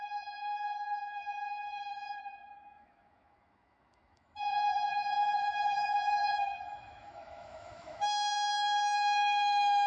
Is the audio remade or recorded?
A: remade